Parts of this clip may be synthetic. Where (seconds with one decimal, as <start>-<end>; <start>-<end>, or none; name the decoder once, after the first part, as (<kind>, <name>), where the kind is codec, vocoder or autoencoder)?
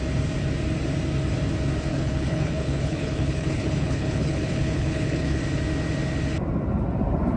1.9-5.4 (codec, HILCodec)